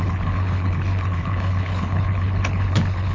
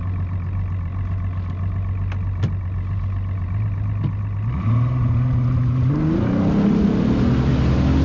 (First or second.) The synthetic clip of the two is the first